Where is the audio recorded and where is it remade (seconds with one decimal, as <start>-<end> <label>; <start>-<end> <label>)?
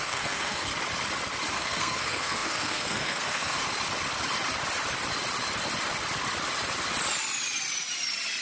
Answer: 0.0-0.7 remade; 0.7-1.5 recorded; 1.5-3.6 remade; 3.6-8.4 recorded